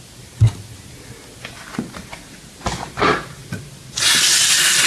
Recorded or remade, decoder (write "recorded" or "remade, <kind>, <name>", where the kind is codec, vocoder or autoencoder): recorded